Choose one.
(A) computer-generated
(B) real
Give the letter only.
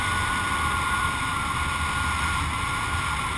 B